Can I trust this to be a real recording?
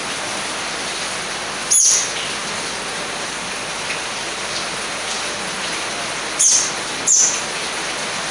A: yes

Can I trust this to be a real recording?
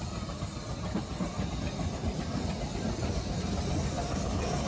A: yes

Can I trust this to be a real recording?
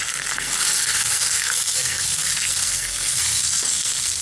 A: no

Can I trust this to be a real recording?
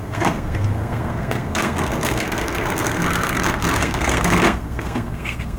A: no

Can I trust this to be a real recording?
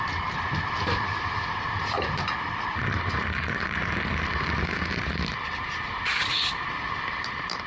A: yes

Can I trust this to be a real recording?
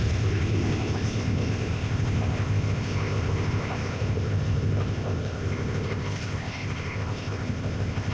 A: no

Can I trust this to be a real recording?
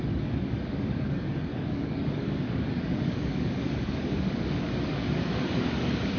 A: no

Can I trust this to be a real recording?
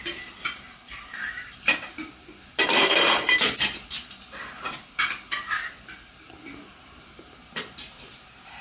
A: no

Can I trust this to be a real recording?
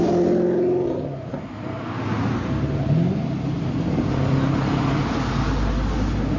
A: yes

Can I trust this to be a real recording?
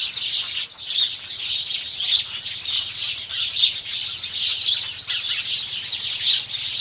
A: yes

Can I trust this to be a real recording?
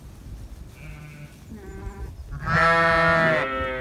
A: yes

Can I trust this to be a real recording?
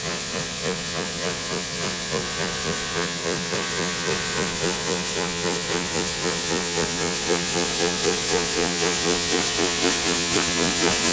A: no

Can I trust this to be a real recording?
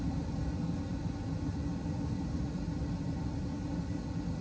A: yes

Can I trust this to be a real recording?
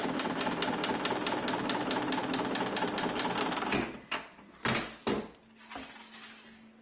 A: yes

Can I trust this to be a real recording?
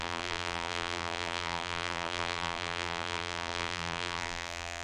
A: no